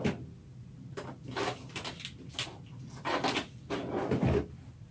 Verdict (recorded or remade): recorded